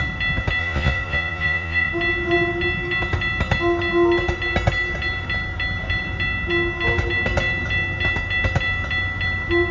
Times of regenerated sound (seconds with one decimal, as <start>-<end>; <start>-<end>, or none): 0.6-1.9